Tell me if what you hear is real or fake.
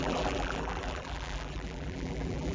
fake